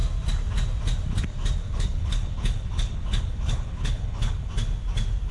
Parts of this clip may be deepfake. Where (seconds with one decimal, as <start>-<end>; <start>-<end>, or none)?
1.6-4.5